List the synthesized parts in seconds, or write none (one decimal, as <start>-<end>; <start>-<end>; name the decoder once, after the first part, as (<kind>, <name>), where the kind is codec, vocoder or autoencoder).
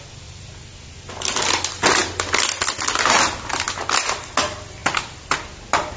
none